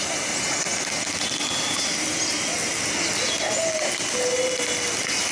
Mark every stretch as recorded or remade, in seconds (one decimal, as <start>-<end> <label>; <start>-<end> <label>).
0.0-5.3 recorded